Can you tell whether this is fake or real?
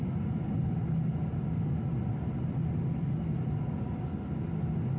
real